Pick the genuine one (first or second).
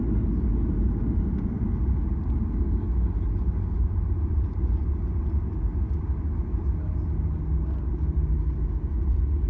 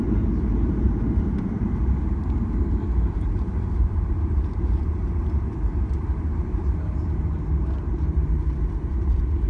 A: first